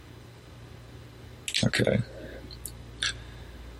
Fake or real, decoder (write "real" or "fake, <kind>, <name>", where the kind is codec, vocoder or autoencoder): real